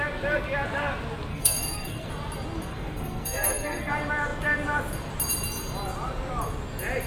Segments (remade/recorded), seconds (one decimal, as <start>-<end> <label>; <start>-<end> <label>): 0.0-1.3 recorded; 1.3-2.1 remade; 2.1-2.7 recorded; 2.7-3.9 remade; 3.9-7.1 recorded